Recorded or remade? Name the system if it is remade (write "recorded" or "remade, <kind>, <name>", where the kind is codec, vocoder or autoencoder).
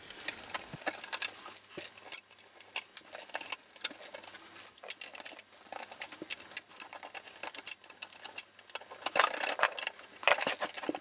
recorded